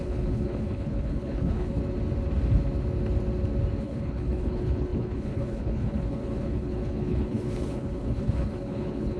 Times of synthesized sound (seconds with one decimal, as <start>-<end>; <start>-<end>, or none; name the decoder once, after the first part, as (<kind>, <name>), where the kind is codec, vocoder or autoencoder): 0.0-1.8 (codec, HILCodec); 3.8-9.2